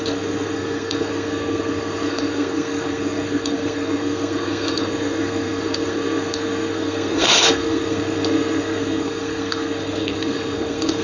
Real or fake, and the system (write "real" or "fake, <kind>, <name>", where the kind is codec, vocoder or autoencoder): fake, codec, SNAC